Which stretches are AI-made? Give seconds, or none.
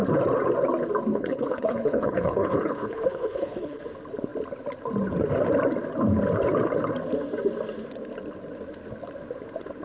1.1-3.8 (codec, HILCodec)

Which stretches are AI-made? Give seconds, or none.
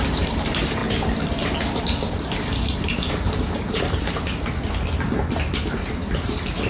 0.0-4.3 (vocoder, BigVGAN v2); 5.6-6.7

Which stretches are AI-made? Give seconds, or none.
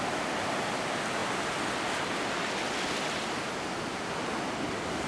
none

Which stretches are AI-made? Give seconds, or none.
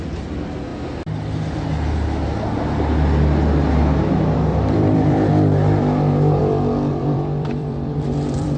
4.5-5.3 (vocoder, BigVGAN v2); 6.4-8.6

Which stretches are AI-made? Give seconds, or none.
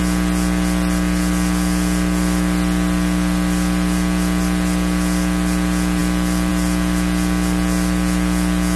none